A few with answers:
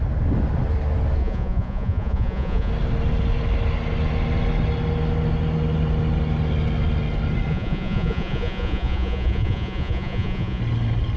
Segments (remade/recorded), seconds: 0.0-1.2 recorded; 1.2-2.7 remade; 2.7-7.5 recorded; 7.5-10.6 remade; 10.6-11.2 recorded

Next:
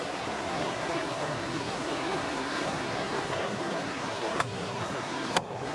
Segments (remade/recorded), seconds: 0.0-5.7 remade